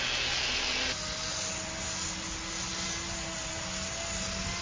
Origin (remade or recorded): recorded